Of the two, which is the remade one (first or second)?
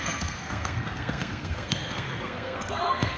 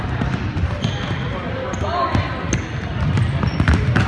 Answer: first